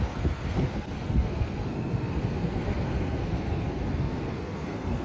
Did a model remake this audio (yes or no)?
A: yes